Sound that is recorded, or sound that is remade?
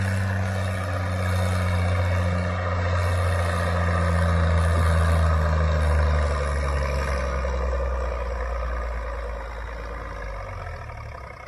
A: recorded